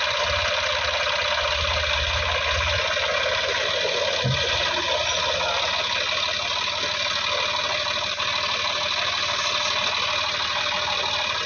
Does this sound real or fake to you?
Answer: real